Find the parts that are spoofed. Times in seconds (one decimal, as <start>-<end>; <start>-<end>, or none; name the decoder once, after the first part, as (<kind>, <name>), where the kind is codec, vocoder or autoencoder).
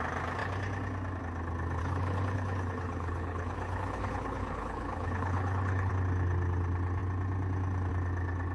1.8-5.9 (codec, HILCodec)